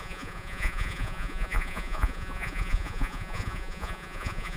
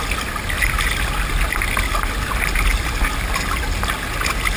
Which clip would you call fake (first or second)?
first